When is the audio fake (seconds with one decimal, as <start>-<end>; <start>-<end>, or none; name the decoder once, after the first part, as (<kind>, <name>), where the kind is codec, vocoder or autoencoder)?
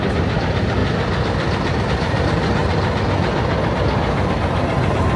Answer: 0.0-0.8 (vocoder, BigVGAN v2); 1.8-2.6; 4.3-5.2